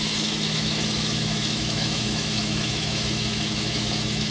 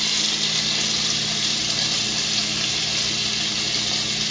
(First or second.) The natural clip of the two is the second